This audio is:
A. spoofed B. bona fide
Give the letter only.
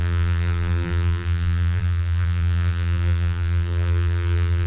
A